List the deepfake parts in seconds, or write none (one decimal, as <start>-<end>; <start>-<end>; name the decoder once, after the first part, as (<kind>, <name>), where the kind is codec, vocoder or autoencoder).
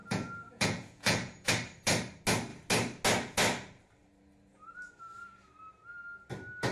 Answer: 0.0-1.5 (vocoder, Vocos)